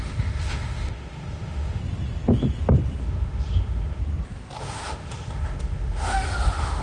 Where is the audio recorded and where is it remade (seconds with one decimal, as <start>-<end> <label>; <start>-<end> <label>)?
0.0-1.8 remade; 1.8-3.0 recorded; 3.0-4.0 remade; 4.0-4.6 recorded; 4.6-6.8 remade